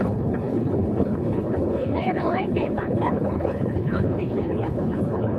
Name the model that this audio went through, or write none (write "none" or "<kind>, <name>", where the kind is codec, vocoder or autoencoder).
codec, HILCodec